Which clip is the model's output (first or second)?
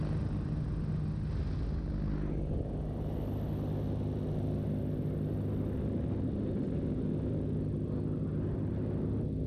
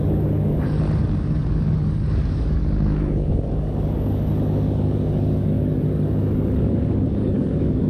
second